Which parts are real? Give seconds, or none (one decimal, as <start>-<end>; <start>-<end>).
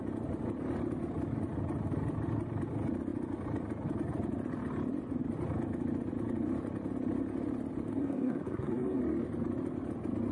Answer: 0.0-7.9; 9.0-10.3